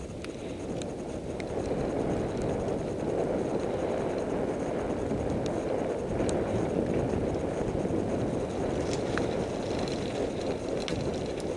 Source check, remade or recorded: recorded